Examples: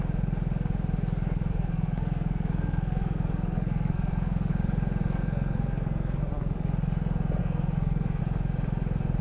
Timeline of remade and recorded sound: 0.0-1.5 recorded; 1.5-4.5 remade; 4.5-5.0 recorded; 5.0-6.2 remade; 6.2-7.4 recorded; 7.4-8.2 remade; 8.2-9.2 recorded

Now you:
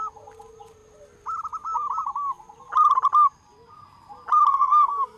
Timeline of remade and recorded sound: 0.0-4.5 recorded; 4.5-5.2 remade

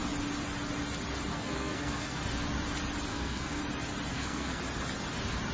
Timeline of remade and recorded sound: 0.0-1.3 recorded; 1.3-2.2 remade; 2.2-3.1 recorded; 3.1-3.6 remade; 3.6-4.1 recorded; 4.1-4.6 remade; 4.6-5.5 recorded

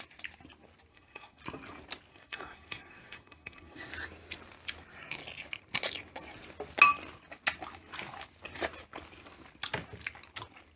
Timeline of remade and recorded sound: 0.0-0.9 recorded; 0.9-1.4 remade; 1.4-2.1 recorded; 2.1-3.9 remade; 3.9-10.8 recorded

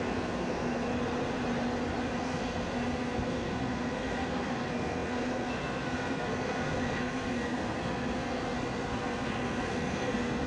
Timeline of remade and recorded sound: 0.0-0.9 remade; 0.9-2.2 recorded; 2.2-10.5 remade

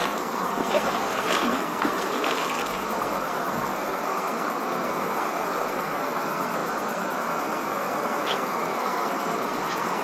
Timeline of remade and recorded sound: 0.0-10.0 remade